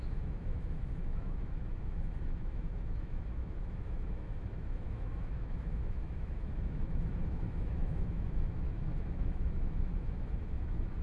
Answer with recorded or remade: remade